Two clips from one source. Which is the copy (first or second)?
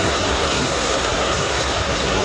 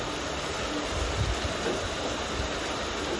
first